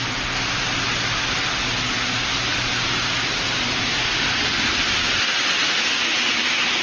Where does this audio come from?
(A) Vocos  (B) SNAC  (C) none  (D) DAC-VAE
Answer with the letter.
C